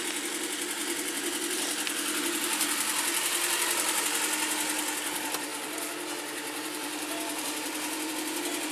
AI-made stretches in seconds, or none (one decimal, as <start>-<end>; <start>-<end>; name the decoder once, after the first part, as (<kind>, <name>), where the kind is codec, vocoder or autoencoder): 0.8-4.0 (vocoder, BigVGAN v2); 5.5-8.1